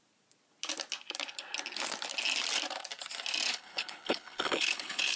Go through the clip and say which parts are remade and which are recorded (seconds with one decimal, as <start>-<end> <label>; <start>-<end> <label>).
0.0-3.5 recorded; 3.5-5.2 remade